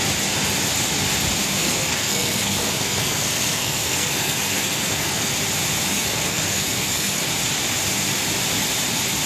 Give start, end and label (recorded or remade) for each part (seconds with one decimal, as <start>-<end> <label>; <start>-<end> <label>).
0.0-1.6 recorded; 1.6-5.3 remade; 5.3-5.9 recorded; 5.9-7.2 remade; 7.2-9.3 recorded